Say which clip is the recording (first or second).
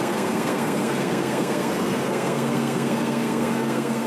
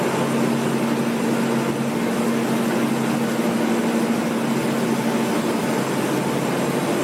second